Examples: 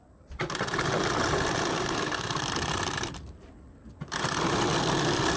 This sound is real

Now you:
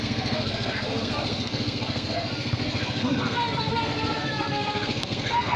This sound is fake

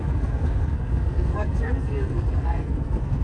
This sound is fake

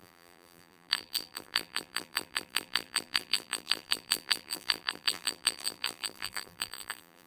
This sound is fake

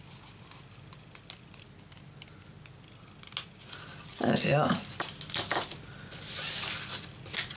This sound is real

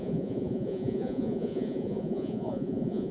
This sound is fake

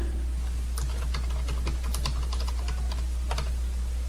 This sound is real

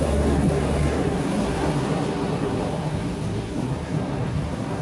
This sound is fake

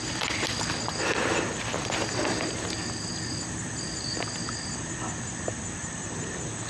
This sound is real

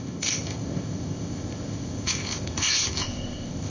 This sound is fake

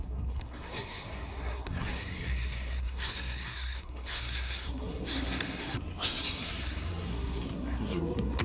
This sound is fake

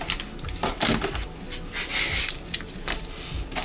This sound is real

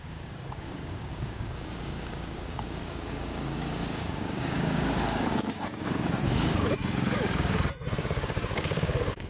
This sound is fake